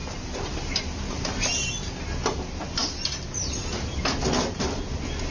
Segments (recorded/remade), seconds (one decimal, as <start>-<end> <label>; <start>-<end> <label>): 0.0-1.9 remade; 1.9-5.3 recorded